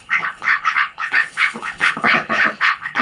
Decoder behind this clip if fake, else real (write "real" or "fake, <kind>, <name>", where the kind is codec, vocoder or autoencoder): fake, codec, HILCodec